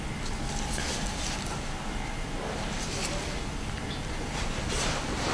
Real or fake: real